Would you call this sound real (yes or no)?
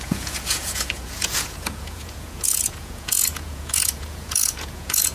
no